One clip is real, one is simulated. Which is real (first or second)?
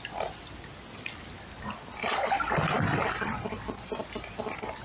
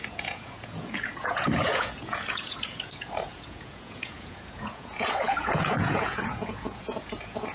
first